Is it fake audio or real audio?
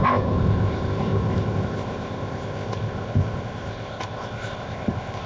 fake